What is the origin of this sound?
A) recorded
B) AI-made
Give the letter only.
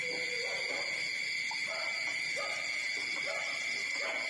A